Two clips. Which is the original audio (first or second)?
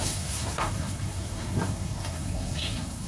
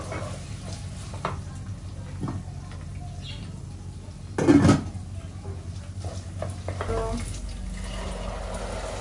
second